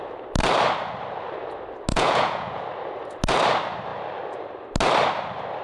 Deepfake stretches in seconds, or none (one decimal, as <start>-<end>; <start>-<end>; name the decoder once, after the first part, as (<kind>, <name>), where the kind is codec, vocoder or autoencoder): 1.9-2.6 (vocoder, Vocos)